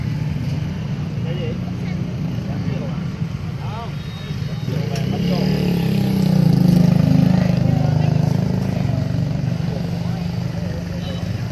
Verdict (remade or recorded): recorded